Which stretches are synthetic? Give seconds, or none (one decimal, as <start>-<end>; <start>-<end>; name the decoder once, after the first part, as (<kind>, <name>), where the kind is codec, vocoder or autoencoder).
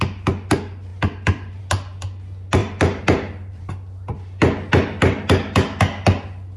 2.6-3.7 (vocoder, BigVGAN v2)